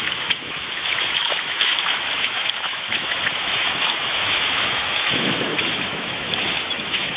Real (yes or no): no